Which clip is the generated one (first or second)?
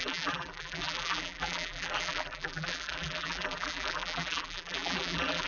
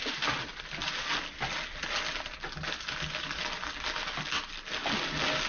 first